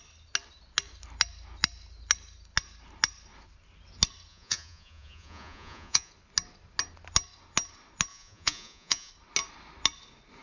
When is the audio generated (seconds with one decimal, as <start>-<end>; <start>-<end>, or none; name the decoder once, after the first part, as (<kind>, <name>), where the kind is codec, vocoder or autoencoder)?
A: 4.3-6.1 (vocoder, Vocos); 8.1-9.1